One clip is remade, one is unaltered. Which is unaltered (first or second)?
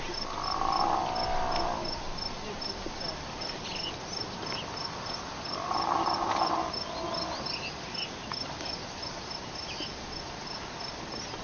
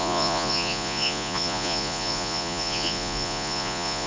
first